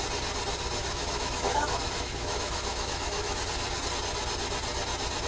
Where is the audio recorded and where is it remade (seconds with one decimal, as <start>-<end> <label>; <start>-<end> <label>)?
0.0-0.8 recorded; 0.8-3.4 remade; 3.4-5.3 recorded